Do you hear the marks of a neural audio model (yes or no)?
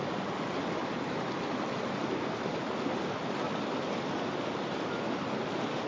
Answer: no